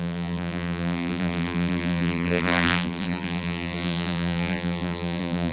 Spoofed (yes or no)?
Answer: yes